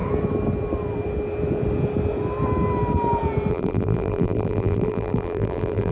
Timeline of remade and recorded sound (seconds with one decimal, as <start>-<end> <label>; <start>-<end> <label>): 0.0-3.5 recorded; 3.5-5.9 remade